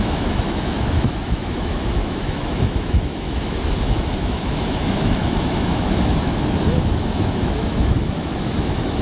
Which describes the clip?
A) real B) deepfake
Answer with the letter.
B